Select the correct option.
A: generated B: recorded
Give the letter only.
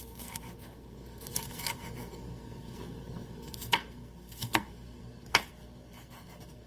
A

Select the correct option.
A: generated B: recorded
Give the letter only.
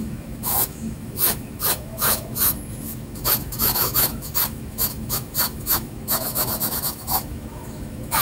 A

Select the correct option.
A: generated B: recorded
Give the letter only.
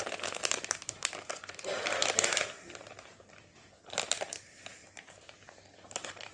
A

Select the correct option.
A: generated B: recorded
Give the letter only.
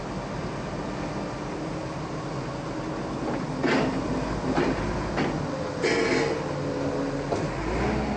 B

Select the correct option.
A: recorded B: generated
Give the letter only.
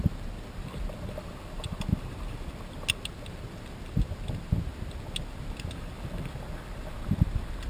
A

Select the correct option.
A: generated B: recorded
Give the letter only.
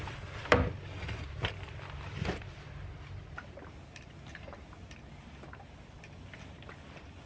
B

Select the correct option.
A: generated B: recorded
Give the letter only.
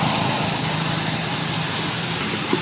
B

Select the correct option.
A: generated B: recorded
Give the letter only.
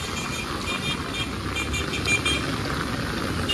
B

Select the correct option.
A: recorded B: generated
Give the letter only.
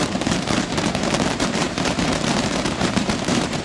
B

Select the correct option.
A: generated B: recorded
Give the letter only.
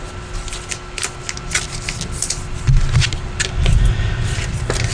B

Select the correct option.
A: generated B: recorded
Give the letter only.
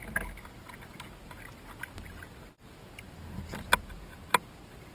B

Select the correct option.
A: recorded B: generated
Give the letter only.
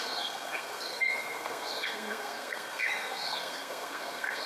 B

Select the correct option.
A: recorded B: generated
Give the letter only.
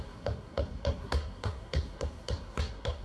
B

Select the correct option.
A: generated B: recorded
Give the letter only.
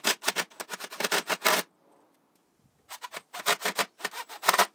B